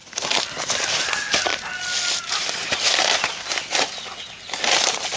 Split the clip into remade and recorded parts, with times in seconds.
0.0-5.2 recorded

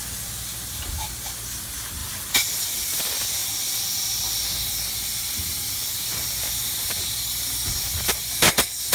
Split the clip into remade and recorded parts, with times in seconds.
0.0-2.0 recorded; 2.0-3.0 remade; 3.0-5.8 recorded; 5.8-6.6 remade; 6.6-8.9 recorded

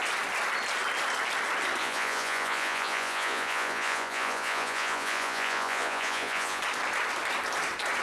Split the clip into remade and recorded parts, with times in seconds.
0.0-1.8 recorded; 1.8-6.6 remade; 6.6-8.0 recorded